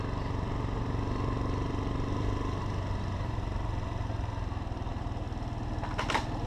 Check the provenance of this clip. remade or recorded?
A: recorded